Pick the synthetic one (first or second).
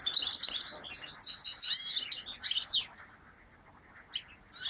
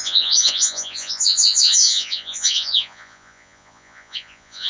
second